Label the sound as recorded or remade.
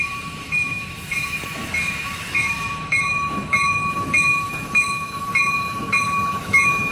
remade